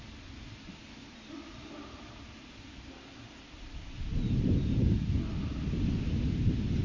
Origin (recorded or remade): recorded